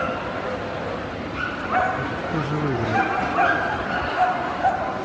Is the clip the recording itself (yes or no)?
yes